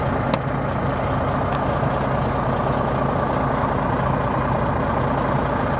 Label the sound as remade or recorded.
recorded